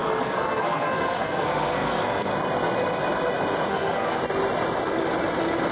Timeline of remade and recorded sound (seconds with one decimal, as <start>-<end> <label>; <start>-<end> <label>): 0.0-2.3 remade; 2.3-3.7 recorded; 3.7-4.2 remade; 4.2-5.7 recorded